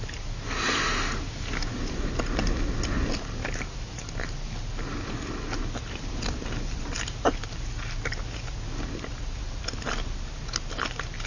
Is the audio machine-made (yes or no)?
no